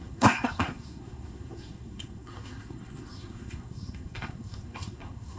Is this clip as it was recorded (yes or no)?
no